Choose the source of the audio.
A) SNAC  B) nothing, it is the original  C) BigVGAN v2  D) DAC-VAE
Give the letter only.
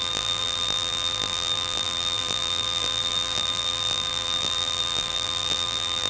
C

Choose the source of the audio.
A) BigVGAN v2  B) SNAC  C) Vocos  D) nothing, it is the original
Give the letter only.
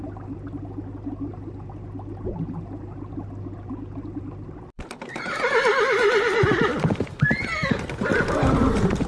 D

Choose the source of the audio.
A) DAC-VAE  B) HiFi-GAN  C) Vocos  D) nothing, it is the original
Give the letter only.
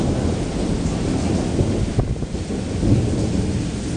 D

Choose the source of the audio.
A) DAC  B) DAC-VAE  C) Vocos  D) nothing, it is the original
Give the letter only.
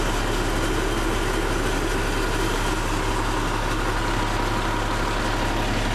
D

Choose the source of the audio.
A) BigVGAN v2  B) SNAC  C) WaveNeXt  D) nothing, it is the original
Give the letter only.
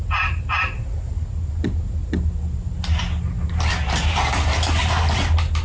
D